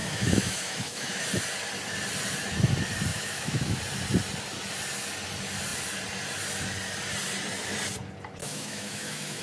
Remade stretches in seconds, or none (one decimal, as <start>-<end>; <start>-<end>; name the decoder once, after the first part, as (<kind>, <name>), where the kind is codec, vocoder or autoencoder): 0.0-1.2 (autoencoder, DAC-VAE); 3.1-3.8; 8.4-9.4